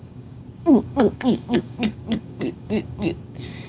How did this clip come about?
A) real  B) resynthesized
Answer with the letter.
B